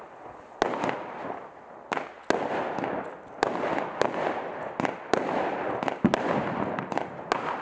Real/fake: real